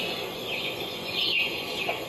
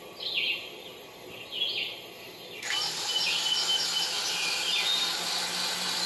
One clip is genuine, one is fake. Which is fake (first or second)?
first